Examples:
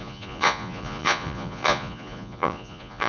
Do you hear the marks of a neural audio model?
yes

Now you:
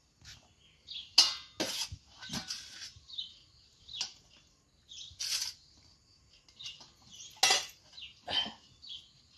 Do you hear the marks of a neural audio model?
no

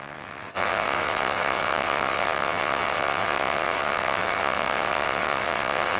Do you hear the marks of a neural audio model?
yes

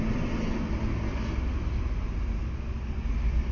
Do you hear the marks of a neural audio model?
no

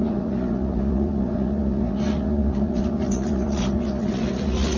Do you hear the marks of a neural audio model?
yes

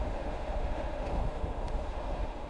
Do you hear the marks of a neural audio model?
yes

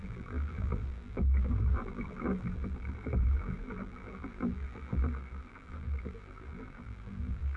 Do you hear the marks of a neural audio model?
yes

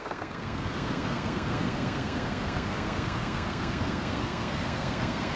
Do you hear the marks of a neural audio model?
yes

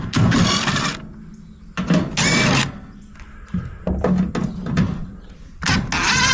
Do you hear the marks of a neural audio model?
no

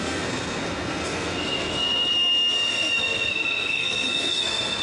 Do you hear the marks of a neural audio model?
yes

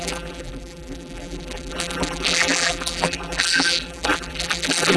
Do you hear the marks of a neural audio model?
yes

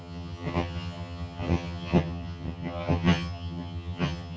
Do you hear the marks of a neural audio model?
yes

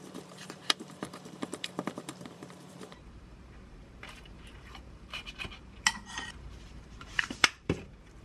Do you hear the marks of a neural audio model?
yes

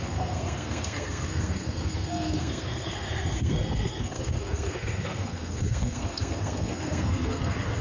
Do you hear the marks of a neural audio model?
yes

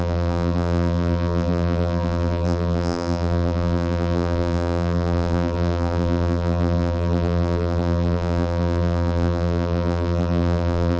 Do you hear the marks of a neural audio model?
yes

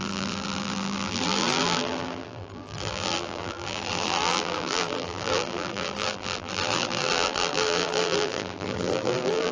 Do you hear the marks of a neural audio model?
yes